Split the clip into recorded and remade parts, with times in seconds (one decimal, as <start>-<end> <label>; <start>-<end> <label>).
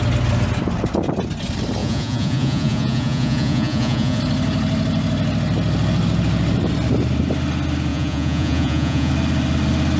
0.0-1.8 recorded; 1.8-4.2 remade; 4.2-7.9 recorded; 7.9-9.1 remade; 9.1-10.0 recorded